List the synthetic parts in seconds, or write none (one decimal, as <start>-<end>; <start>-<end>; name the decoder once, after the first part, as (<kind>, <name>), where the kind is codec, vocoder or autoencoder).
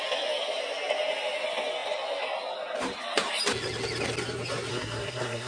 4.7-5.5 (codec, SNAC)